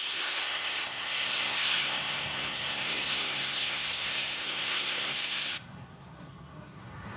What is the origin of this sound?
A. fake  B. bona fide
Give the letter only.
A